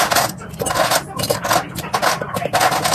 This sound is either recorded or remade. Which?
recorded